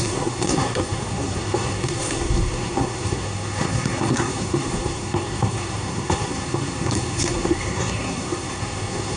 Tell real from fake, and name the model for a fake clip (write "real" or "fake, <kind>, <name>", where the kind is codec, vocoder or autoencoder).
fake, codec, SNAC